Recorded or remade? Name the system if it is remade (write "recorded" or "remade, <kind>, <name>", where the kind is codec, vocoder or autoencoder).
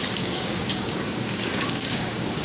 remade, codec, DAC